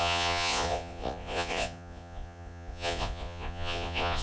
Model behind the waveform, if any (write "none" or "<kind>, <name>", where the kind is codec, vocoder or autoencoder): vocoder, Vocos